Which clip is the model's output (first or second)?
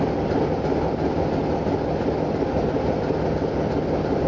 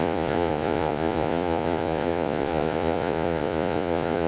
second